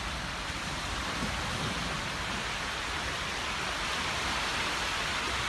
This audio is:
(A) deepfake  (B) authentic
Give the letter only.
B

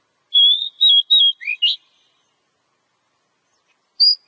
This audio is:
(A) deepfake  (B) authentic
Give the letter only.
B